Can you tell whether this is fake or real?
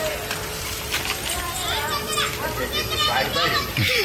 fake